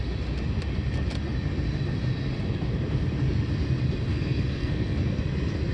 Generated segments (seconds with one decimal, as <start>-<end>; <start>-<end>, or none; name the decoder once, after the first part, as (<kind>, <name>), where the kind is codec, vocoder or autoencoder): 4.1-5.2 (codec, SNAC)